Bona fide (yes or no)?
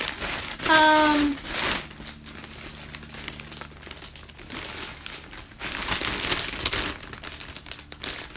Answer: yes